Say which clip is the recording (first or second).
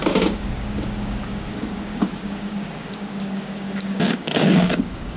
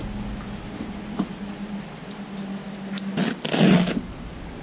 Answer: second